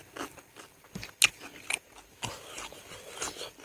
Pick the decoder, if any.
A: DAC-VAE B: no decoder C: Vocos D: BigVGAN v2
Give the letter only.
B